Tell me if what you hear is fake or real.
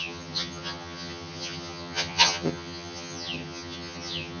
fake